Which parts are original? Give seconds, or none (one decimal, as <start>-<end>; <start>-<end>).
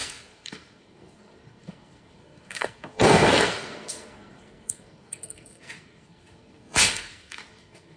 none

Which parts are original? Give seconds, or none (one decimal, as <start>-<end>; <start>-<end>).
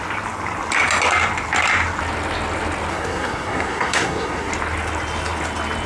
0.0-2.9; 4.5-5.9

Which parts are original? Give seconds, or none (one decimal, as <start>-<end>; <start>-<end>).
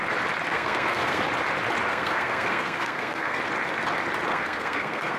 0.0-0.5; 1.2-1.9; 3.4-4.3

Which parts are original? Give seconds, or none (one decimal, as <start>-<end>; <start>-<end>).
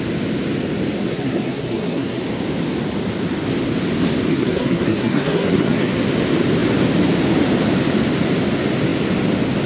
0.0-1.0; 2.2-4.3; 5.9-9.7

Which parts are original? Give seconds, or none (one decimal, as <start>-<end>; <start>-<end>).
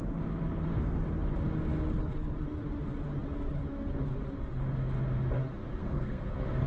0.0-5.8; 6.3-6.7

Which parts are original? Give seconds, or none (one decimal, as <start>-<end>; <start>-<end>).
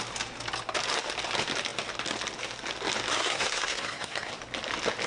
0.0-3.1; 4.3-5.1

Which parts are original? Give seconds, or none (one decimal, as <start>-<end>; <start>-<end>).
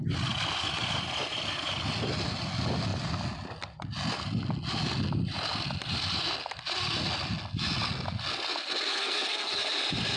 0.0-8.9; 9.6-10.2